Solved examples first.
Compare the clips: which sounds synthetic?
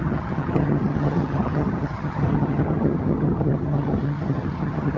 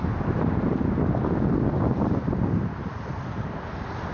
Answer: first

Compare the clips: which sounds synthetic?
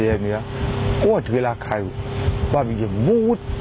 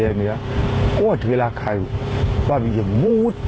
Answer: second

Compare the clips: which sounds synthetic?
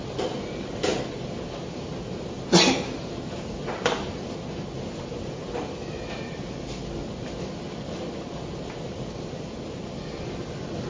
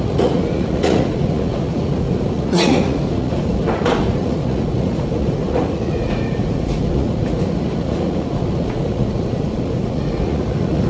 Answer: second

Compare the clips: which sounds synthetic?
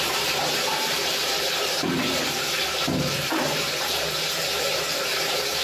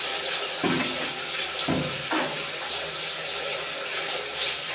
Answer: first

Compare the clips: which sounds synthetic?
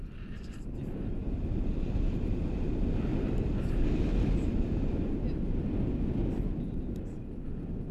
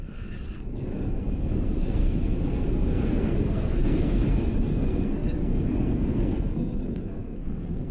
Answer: second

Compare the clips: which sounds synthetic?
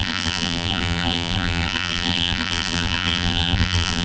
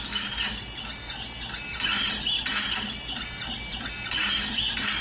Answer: first